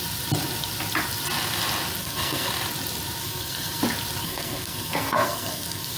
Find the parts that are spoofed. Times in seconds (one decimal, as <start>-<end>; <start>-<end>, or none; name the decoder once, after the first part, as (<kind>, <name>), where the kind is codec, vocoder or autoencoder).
2.0-2.5 (codec, SNAC); 3.2-3.8; 4.2-6.0